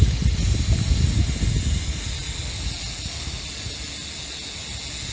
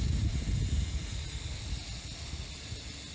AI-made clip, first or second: second